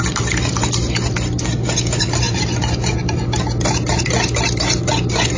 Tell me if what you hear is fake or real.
real